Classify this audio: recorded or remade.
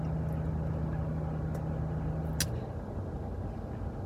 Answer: recorded